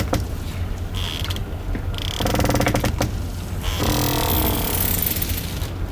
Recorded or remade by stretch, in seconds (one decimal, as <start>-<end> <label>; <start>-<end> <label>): 0.0-5.9 recorded